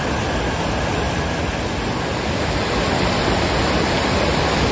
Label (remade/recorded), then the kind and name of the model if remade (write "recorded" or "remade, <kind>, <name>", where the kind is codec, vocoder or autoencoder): recorded